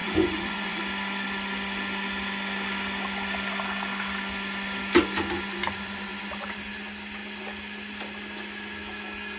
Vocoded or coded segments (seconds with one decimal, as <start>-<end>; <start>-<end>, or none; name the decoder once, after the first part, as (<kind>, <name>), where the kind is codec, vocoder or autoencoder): 0.0-0.8 (vocoder, Vocos)